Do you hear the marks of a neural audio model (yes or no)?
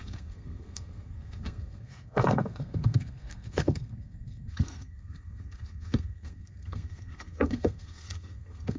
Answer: yes